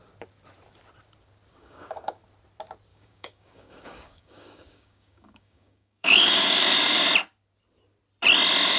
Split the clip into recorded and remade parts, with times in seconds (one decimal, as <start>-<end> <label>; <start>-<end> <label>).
0.0-1.5 recorded; 1.5-2.2 remade; 2.2-2.9 recorded; 2.9-7.0 remade; 7.0-8.8 recorded